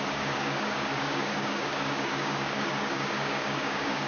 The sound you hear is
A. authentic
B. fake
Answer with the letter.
B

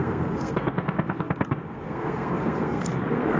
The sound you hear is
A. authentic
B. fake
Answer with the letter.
B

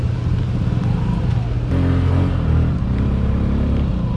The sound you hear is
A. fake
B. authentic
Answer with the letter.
B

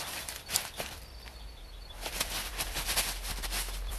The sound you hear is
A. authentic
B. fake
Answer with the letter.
B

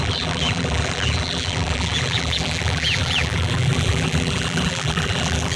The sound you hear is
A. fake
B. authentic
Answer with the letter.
A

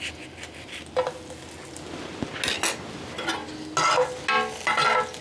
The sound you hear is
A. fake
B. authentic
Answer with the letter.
B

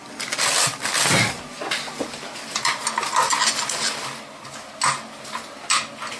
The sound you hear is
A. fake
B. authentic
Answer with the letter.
B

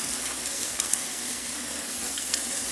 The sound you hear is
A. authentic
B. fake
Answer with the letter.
B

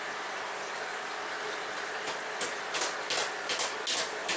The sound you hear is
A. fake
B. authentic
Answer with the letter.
B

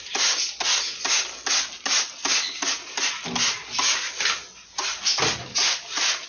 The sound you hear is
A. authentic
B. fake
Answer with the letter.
A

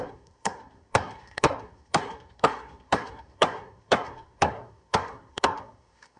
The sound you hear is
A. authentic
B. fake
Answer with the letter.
B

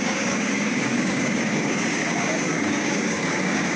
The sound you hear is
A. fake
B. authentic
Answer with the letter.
A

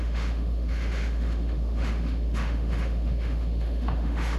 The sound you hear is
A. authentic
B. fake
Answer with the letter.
B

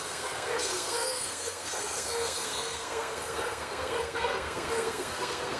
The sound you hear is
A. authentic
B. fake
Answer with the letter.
B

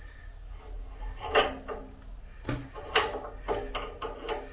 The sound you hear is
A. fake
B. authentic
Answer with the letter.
B